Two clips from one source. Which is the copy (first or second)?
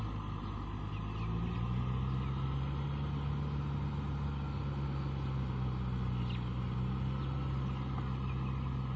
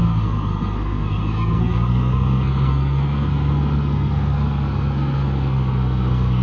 second